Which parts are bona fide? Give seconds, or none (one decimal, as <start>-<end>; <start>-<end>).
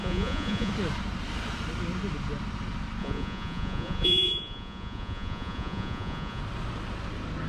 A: 0.7-3.0; 6.4-7.5